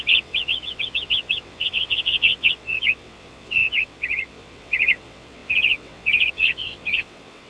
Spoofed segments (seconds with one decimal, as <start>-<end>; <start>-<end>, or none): 0.0-7.5